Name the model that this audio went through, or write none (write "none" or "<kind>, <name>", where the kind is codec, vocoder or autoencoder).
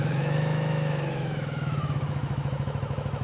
autoencoder, DAC-VAE